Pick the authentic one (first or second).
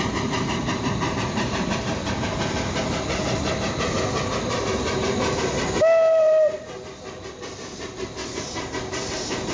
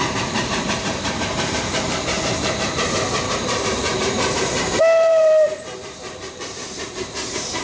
first